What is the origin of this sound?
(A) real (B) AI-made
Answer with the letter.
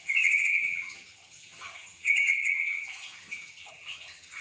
B